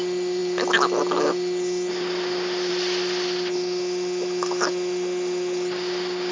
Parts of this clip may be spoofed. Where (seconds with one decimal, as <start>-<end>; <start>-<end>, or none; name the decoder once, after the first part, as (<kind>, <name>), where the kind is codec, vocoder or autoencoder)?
none